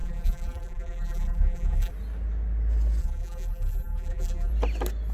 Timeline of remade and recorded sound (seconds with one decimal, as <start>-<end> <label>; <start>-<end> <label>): 0.0-1.9 remade; 1.9-3.0 recorded; 3.0-4.5 remade; 4.5-5.1 recorded